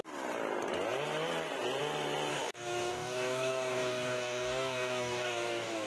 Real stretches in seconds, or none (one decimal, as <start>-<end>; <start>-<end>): 0.0-2.3